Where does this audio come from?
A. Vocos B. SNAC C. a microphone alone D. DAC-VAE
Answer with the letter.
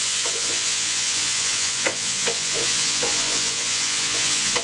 A